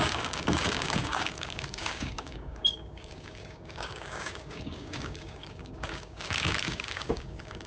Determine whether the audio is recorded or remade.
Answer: remade